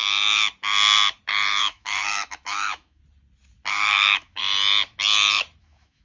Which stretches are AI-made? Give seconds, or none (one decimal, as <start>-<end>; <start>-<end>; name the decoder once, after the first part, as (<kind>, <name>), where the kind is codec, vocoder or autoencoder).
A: 1.6-3.0 (autoencoder, DAC-VAE); 3.7-4.4; 5.6-6.0